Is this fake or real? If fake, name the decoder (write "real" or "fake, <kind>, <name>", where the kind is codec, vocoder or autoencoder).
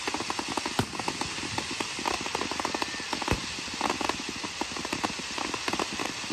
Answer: real